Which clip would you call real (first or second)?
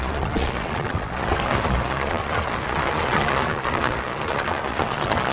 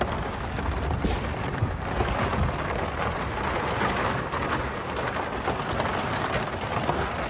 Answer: second